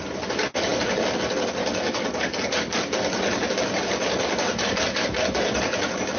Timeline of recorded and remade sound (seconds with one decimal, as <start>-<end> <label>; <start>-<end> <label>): 0.0-6.2 recorded